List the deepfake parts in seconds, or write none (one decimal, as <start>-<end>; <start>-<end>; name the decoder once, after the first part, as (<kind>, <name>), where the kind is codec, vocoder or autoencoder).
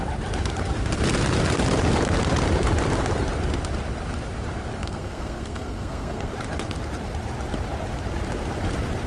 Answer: 4.8-6.3 (codec, SNAC)